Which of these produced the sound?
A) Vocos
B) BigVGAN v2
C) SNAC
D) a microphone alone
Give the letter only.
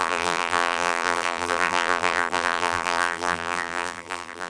B